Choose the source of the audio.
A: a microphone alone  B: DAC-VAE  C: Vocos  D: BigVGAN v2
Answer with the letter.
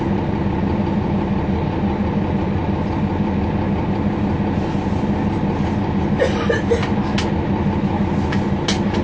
A